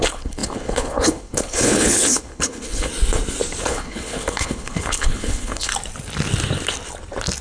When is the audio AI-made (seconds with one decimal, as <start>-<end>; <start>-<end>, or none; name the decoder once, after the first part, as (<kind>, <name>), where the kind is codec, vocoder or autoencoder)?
0.0-2.9 (codec, HILCodec); 3.6-5.7